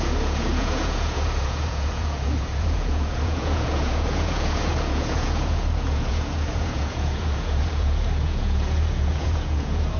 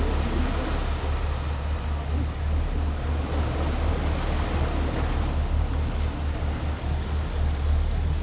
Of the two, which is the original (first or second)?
second